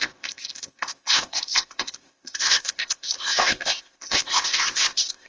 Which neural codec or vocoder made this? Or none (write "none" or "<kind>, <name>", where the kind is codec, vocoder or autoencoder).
codec, ZipCodec